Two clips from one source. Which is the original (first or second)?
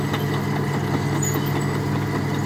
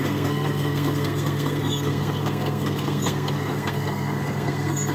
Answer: first